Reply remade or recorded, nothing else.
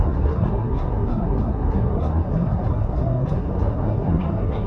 remade